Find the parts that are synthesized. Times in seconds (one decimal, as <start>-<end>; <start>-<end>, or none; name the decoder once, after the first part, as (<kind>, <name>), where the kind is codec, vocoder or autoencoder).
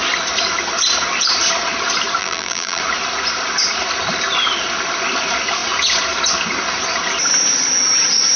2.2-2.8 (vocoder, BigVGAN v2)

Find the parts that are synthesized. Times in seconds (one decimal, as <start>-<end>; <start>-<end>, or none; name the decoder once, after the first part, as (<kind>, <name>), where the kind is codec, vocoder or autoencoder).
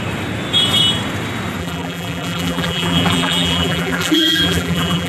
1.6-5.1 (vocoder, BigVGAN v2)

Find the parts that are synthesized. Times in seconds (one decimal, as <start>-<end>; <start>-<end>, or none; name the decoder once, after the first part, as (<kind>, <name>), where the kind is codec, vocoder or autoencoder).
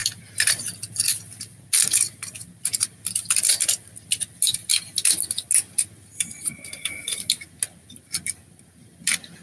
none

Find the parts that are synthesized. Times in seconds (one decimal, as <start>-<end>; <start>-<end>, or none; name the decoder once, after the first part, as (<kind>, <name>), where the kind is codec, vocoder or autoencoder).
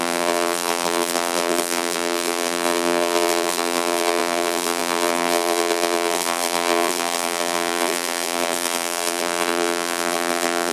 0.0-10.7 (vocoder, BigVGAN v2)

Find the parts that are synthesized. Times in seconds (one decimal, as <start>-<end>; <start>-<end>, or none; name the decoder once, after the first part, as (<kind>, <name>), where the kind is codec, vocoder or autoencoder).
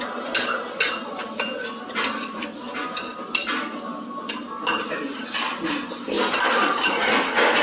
3.1-5.2 (vocoder, BigVGAN v2)